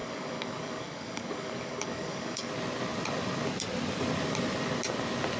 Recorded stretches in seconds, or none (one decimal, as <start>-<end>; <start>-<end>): 2.5-5.4